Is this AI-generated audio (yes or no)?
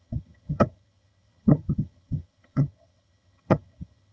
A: yes